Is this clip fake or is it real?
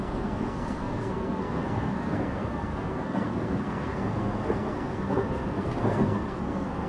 fake